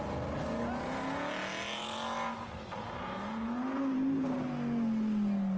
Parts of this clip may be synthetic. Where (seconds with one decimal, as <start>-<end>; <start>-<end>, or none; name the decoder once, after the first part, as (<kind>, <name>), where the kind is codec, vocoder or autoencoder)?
none